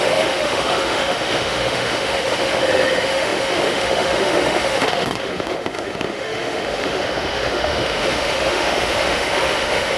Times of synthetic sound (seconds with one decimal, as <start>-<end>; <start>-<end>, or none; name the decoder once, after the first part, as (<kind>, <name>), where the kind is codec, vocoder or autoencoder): 0.0-10.0 (autoencoder, DAC-VAE)